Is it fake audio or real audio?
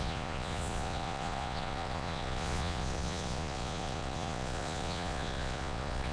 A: fake